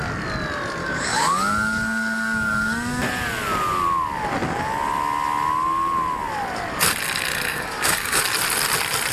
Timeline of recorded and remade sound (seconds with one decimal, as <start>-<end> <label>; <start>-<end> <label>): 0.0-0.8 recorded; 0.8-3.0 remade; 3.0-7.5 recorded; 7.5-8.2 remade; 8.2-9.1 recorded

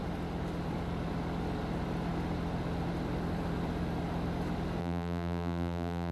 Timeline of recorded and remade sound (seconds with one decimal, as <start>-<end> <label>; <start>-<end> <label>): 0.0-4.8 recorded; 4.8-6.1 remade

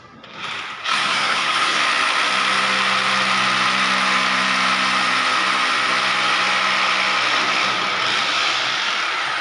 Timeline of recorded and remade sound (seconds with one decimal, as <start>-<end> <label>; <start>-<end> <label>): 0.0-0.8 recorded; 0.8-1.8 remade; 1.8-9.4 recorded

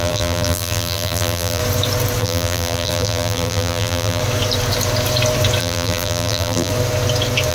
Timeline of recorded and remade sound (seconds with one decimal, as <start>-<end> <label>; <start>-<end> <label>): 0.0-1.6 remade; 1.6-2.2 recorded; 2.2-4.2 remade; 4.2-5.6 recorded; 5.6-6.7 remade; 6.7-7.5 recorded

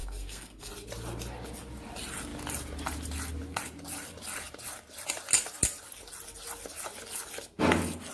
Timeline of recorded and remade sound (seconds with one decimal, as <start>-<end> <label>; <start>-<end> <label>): 0.0-0.7 remade; 0.7-8.1 recorded

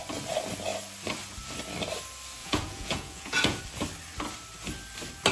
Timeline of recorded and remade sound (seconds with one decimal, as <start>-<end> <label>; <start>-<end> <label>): 0.0-2.4 recorded; 2.4-3.6 remade; 3.6-5.3 recorded

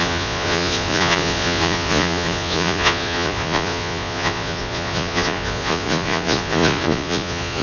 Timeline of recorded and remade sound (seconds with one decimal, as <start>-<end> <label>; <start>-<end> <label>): 0.0-7.6 remade